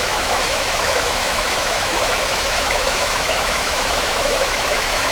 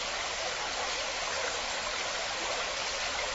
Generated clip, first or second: first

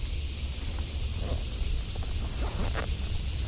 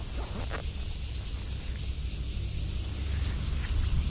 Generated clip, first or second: first